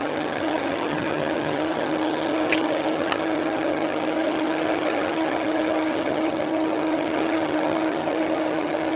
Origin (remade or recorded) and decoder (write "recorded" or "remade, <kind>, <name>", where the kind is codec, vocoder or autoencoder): remade, vocoder, HiFi-GAN